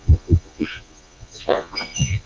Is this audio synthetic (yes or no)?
yes